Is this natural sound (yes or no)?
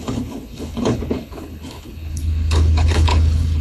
no